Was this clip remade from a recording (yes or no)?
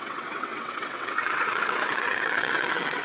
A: yes